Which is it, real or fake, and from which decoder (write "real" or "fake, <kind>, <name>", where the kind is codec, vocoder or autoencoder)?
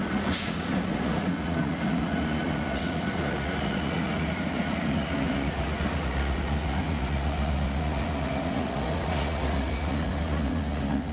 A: fake, vocoder, Vocos